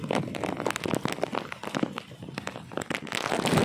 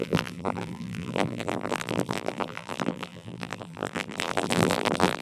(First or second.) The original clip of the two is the first